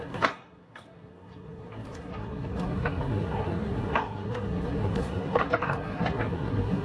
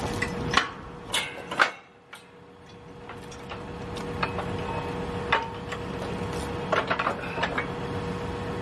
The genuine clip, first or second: second